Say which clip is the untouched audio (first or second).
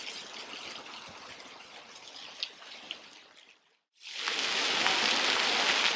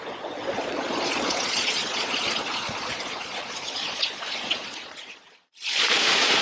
first